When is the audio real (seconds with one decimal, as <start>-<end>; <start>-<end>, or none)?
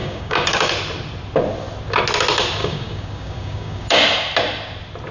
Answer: 0.7-2.6; 4.0-5.1